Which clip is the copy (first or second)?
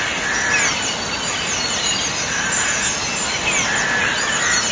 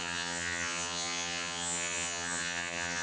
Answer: second